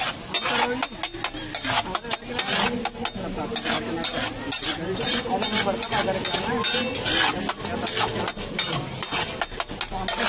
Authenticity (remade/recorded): recorded